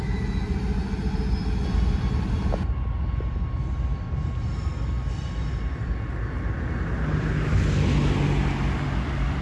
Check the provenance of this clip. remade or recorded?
recorded